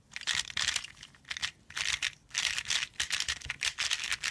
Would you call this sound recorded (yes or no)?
yes